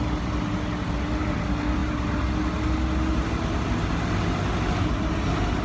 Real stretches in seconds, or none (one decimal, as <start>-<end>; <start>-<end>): 0.0-5.6